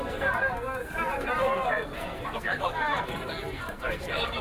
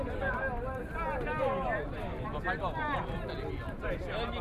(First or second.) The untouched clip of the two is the second